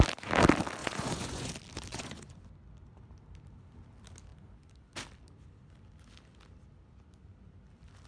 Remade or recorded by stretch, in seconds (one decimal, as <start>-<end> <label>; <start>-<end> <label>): 0.0-0.8 recorded; 0.8-1.5 remade; 1.5-1.9 recorded; 1.9-2.4 remade; 2.4-8.1 recorded